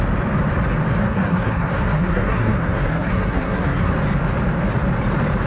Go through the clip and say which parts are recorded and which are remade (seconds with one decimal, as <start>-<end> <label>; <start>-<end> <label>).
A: 0.0-1.0 recorded; 1.0-3.9 remade; 3.9-5.5 recorded